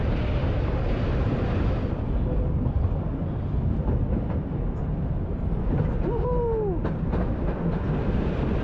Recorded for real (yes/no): yes